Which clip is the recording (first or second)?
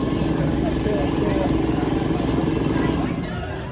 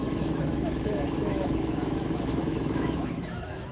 first